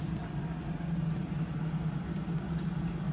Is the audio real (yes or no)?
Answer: yes